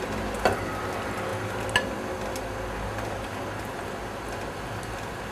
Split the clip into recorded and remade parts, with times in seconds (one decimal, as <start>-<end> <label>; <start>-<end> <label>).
0.0-5.3 recorded